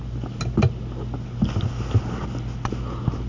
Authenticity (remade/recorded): recorded